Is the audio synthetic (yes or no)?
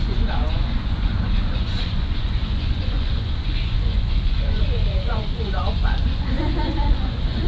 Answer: yes